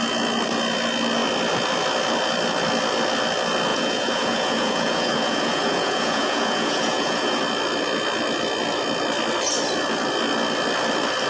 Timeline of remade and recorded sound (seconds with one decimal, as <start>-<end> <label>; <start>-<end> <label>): 0.0-3.7 recorded; 3.7-7.4 remade; 7.4-11.3 recorded